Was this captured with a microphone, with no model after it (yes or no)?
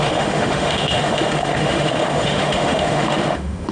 no